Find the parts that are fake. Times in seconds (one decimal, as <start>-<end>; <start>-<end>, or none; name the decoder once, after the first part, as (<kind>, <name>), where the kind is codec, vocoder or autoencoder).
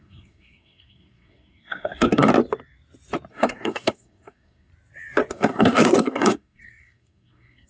0.0-2.3 (codec, SNAC); 3.3-4.7; 5.3-7.7